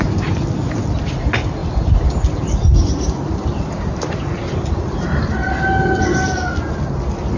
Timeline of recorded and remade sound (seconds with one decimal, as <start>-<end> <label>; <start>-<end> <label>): 0.0-7.4 recorded